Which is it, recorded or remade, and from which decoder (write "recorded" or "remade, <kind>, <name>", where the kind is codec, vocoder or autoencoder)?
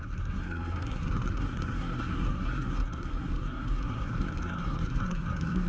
remade, codec, SNAC